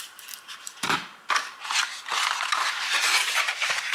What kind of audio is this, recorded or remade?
recorded